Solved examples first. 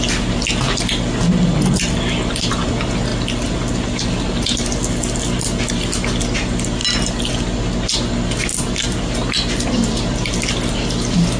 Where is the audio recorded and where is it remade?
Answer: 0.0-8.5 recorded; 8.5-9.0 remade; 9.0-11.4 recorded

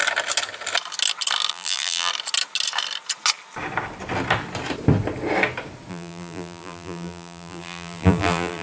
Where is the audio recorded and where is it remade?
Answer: 0.0-1.5 recorded; 1.5-2.1 remade; 2.1-5.9 recorded; 5.9-8.6 remade

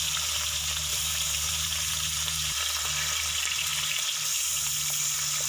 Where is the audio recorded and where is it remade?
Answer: 0.0-0.9 recorded; 0.9-2.6 remade; 2.6-5.5 recorded

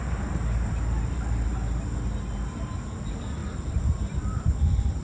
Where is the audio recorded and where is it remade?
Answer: 0.0-1.5 remade; 1.5-3.0 recorded; 3.0-5.0 remade

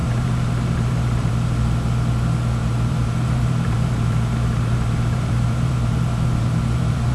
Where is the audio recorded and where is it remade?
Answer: 0.0-1.3 remade; 1.3-2.6 recorded; 2.6-7.1 remade

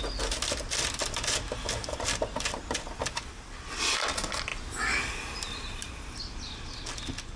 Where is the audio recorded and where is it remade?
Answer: 0.0-7.4 recorded